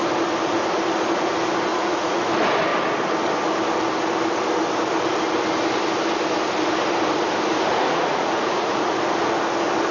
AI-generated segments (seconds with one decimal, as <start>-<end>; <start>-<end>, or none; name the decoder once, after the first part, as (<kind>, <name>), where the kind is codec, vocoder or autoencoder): 1.7-2.3 (vocoder, Vocos); 7.7-8.9